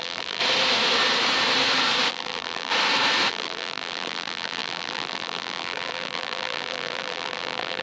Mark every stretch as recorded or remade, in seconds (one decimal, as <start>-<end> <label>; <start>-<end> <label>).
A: 0.0-0.4 remade; 0.4-2.1 recorded; 2.1-2.7 remade; 2.7-3.3 recorded; 3.3-7.8 remade